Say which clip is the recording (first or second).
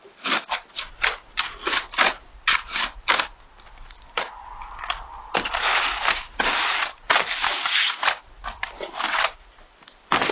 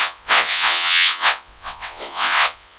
first